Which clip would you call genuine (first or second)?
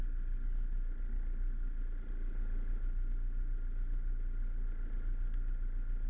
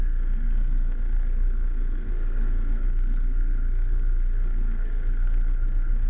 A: first